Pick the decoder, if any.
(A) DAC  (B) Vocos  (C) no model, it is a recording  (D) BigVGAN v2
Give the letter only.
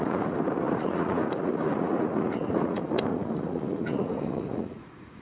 B